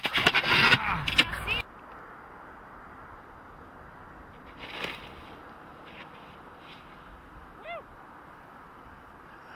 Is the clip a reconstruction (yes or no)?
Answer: no